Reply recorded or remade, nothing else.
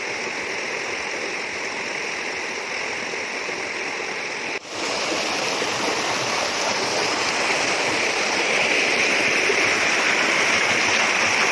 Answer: recorded